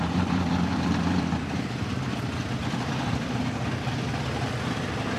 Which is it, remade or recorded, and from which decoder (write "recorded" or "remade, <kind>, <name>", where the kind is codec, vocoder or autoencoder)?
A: remade, vocoder, BigVGAN v2